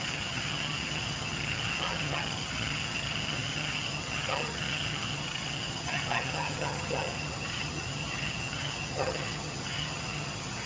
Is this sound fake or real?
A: fake